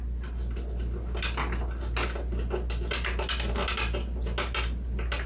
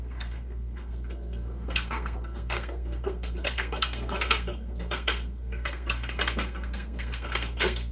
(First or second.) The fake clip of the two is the second